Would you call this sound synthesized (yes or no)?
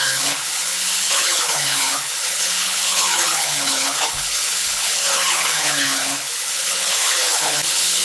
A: yes